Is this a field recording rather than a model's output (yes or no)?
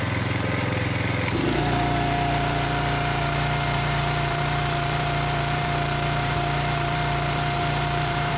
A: no